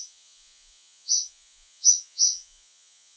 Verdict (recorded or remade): remade